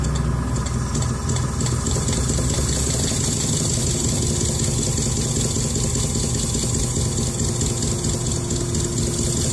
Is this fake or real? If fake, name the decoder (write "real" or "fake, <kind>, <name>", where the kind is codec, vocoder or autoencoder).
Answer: real